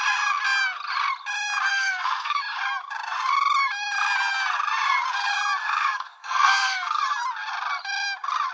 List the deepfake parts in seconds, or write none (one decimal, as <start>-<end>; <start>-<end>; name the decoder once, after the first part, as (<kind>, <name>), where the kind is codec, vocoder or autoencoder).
1.7-2.4 (codec, SNAC); 5.6-7.0